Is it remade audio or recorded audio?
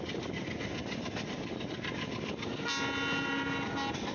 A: recorded